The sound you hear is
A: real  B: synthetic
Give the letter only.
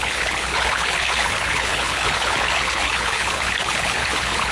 B